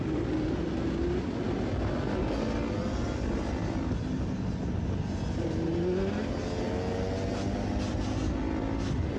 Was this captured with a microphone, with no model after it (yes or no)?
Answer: yes